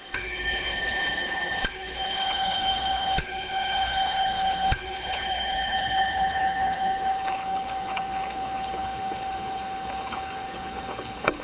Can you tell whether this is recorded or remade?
remade